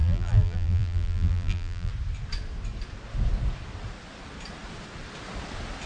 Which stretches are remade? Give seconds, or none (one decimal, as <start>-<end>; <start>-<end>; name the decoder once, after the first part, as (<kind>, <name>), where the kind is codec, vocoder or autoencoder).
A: 0.0-1.9 (vocoder, BigVGAN v2)